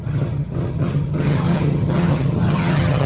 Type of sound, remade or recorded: remade